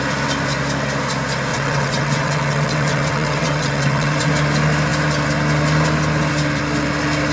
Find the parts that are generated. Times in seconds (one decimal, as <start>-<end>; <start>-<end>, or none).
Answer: 1.5-4.3